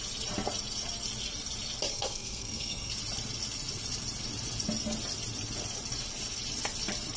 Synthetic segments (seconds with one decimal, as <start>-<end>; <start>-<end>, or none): 1.9-2.9